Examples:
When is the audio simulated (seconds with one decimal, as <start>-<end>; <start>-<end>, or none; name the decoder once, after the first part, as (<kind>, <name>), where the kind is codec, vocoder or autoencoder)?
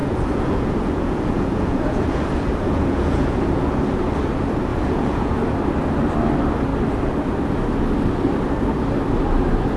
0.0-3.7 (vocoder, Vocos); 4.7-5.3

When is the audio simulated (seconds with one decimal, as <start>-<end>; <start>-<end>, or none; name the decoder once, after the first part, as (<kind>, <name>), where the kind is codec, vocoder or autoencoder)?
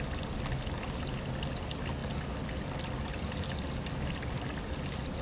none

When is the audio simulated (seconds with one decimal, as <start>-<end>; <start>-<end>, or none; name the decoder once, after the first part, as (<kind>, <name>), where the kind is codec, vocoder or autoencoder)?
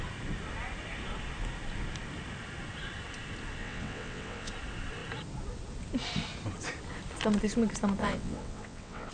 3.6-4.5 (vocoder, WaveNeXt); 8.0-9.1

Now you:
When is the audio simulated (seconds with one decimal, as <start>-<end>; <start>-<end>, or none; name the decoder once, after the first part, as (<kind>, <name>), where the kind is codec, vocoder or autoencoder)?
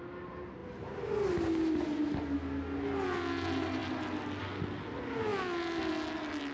none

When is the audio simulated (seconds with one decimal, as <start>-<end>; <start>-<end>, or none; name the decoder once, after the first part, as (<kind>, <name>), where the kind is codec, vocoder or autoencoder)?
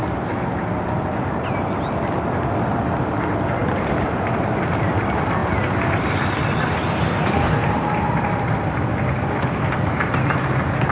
none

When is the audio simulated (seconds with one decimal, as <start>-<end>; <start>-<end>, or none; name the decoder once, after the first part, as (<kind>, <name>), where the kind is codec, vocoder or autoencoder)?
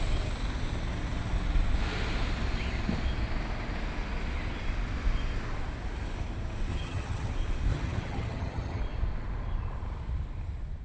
6.7-7.3 (vocoder, HiFi-GAN); 7.7-8.8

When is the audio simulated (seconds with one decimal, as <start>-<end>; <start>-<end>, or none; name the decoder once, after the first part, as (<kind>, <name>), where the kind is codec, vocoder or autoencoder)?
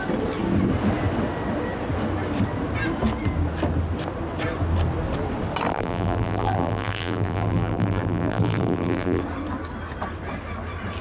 5.7-9.2 (vocoder, BigVGAN v2)